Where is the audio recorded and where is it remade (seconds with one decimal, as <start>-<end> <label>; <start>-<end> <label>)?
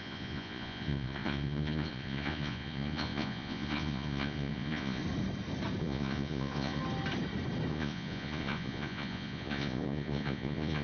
0.0-5.0 remade; 5.0-5.8 recorded; 5.8-6.8 remade; 6.8-7.7 recorded; 7.7-10.8 remade